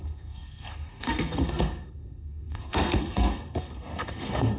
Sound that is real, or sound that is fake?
fake